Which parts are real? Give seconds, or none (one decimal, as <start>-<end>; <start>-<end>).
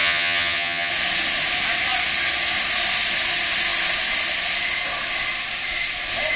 0.9-6.4